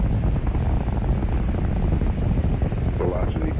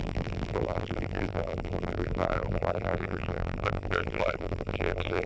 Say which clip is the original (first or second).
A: first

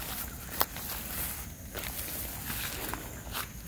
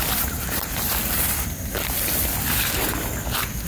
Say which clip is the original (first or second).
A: first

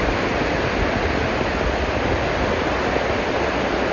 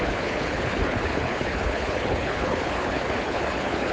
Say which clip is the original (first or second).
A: first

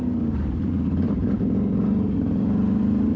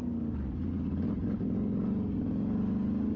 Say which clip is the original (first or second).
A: second